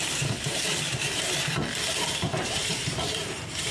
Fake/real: fake